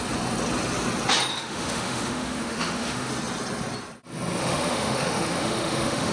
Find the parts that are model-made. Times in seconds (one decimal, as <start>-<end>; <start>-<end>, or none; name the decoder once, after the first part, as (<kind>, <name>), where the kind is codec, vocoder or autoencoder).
1.3-3.1 (autoencoder, DAC-VAE); 4.4-6.1